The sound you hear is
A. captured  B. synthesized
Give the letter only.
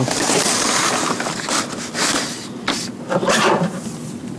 A